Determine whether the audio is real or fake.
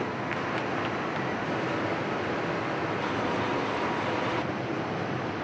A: real